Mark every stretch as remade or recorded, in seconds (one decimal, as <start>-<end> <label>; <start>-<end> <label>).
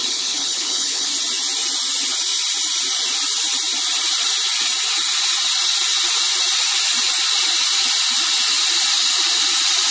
0.0-1.1 remade; 1.1-9.9 recorded